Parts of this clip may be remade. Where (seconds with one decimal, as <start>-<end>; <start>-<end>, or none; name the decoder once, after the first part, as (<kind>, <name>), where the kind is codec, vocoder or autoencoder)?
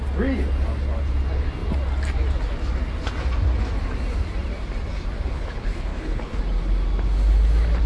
5.3-6.4 (codec, HILCodec)